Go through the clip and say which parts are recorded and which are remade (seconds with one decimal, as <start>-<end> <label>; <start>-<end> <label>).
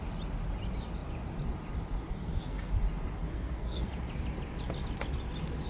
0.0-2.1 recorded; 2.1-2.7 remade; 2.7-3.2 recorded; 3.2-3.9 remade; 3.9-5.7 recorded